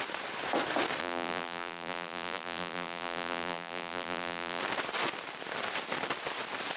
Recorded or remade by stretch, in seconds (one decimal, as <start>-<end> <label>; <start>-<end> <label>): 0.0-1.0 recorded; 1.0-4.6 remade; 4.6-6.8 recorded